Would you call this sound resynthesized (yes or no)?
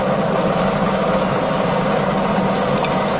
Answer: no